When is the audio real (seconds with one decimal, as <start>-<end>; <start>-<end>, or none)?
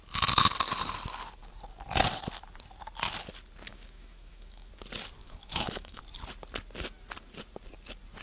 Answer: 0.0-3.7; 4.7-5.2; 6.0-8.2